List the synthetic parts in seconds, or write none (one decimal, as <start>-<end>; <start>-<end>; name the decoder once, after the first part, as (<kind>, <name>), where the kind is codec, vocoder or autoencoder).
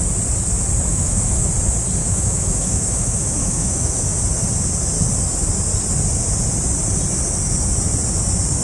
0.9-1.5 (autoencoder, DAC-VAE); 2.0-4.0